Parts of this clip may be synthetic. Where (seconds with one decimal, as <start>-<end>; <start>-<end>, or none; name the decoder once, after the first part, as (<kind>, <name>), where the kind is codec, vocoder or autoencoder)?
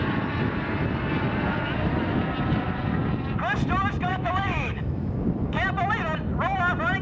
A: 4.1-5.1 (autoencoder, DAC-VAE)